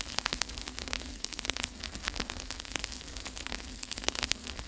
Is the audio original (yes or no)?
no